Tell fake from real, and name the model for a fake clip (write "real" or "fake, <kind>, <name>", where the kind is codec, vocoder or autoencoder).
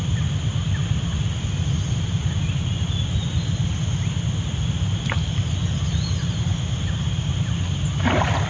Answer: real